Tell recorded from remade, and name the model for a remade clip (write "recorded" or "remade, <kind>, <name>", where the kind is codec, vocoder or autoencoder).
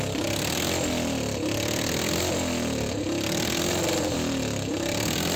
recorded